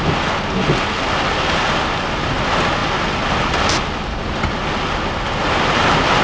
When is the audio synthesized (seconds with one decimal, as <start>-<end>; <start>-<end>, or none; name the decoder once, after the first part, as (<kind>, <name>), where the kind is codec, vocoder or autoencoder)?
none